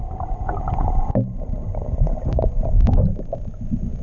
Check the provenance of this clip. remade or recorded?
recorded